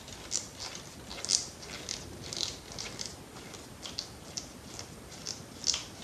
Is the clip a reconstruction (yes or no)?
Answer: no